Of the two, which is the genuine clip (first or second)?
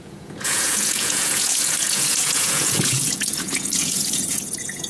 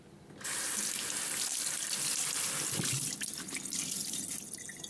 second